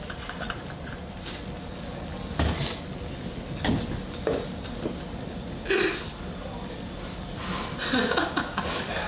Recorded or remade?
recorded